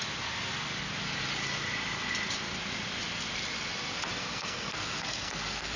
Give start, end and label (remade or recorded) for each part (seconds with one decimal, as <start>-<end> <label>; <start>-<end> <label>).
0.0-4.2 recorded; 4.2-5.8 remade

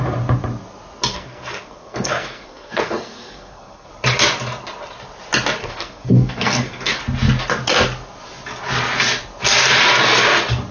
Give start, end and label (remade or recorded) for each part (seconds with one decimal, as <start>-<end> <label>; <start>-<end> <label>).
0.0-1.1 recorded; 1.1-3.9 remade; 3.9-5.6 recorded; 5.6-7.0 remade; 7.0-10.7 recorded

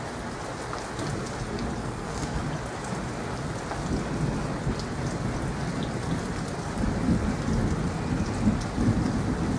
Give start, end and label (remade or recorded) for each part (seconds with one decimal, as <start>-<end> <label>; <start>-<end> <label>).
0.0-1.8 recorded; 1.8-2.4 remade; 2.4-9.6 recorded

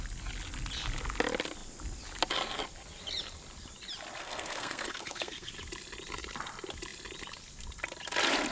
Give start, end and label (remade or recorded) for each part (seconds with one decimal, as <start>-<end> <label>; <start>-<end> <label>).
0.0-4.2 recorded; 4.2-5.5 remade; 5.5-8.5 recorded

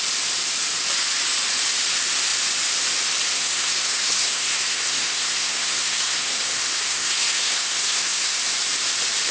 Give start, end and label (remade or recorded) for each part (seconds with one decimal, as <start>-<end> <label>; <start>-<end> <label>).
0.0-3.3 recorded; 3.3-8.4 remade; 8.4-9.3 recorded

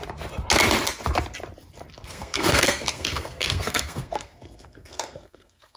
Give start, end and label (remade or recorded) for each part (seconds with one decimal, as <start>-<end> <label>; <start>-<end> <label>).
0.0-2.0 recorded; 2.0-5.8 remade